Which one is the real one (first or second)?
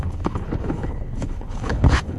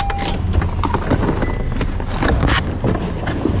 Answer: second